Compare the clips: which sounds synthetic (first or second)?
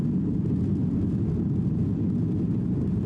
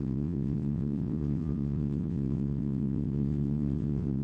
second